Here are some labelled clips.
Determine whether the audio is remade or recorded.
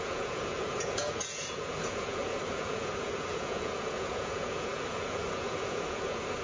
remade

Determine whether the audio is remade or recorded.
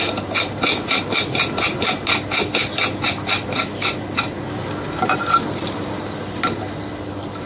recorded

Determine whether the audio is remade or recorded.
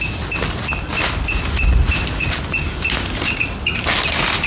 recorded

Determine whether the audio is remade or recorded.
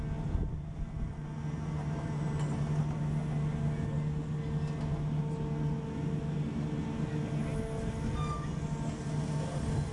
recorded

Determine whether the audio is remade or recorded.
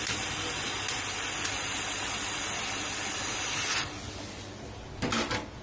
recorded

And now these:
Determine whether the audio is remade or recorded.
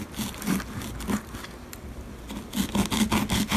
recorded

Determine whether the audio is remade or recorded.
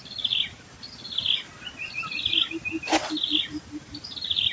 recorded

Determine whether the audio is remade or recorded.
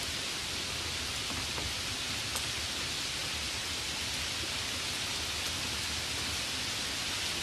recorded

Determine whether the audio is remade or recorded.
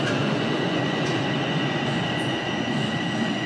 remade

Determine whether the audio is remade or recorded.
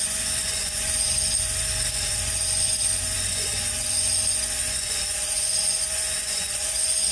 remade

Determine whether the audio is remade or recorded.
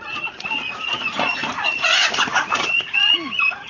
remade